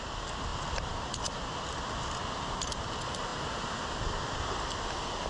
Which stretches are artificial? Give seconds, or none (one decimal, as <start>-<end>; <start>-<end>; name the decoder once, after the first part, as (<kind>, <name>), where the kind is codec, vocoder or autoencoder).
none